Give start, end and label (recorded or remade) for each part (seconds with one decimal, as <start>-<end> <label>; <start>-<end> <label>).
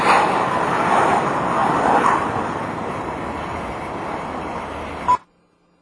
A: 0.0-5.8 recorded